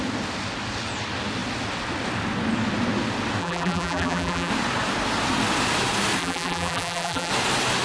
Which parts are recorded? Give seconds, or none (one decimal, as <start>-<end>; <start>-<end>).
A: 0.0-3.4; 4.5-6.2; 7.3-7.8